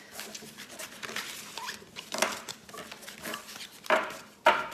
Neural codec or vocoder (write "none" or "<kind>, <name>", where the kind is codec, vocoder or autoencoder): none